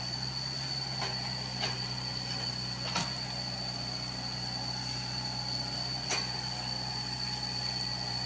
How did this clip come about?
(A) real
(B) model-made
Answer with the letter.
A